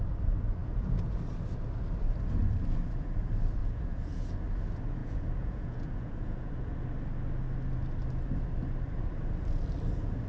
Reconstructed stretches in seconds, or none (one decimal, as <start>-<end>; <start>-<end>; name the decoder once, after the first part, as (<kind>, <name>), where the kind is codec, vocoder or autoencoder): 0.6-1.2 (vocoder, Vocos); 3.6-4.3; 5.0-6.7